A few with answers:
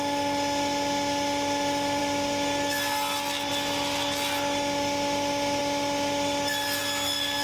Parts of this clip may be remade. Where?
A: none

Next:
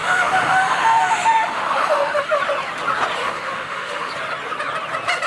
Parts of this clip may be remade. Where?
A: 0.0-2.4 (autoencoder, DAC-VAE); 3.2-4.1

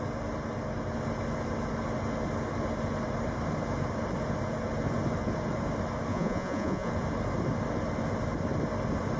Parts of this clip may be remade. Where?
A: 6.1-6.9 (vocoder, Vocos)

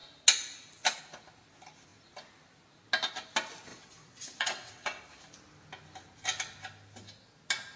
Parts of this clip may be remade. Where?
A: 3.7-5.0 (vocoder, WaveNeXt)

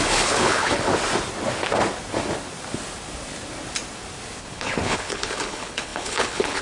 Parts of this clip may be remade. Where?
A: 0.0-0.9 (codec, HILCodec); 4.4-6.6

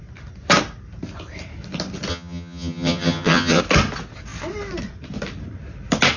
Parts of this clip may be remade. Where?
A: 2.1-3.6 (vocoder, HiFi-GAN)